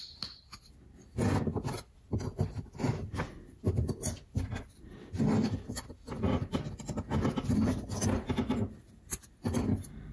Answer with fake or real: real